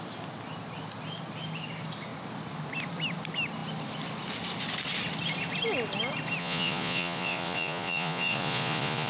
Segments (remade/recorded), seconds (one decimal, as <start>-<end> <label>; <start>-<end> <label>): 0.0-6.4 recorded; 6.4-9.1 remade